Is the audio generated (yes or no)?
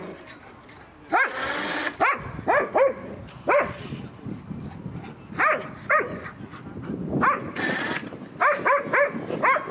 no